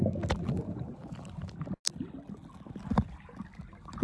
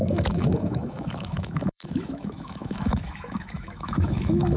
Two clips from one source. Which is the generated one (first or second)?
second